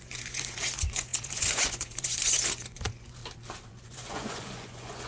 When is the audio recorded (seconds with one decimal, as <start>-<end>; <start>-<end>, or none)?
3.2-3.7